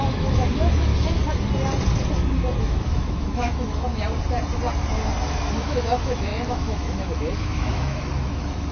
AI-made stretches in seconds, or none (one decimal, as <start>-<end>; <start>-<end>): 0.0-0.9; 2.6-3.9; 5.5-8.7